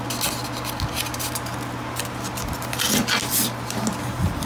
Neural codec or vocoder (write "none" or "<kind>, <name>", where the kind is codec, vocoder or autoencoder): none